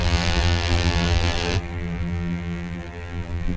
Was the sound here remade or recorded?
remade